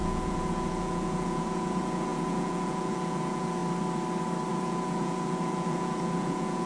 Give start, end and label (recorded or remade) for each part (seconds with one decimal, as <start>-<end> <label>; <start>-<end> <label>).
0.0-3.6 remade; 3.6-4.5 recorded; 4.5-6.7 remade